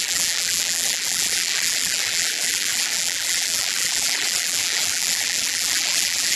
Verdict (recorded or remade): remade